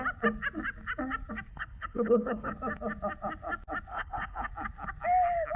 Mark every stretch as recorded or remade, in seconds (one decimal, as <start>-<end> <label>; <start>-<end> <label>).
0.0-1.5 recorded; 1.5-2.5 remade; 2.5-3.9 recorded; 3.9-4.5 remade; 4.5-5.6 recorded